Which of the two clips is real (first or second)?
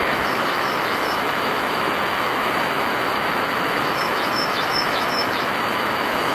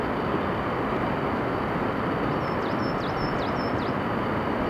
second